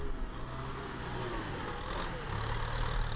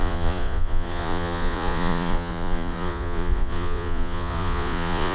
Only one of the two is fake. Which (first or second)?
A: second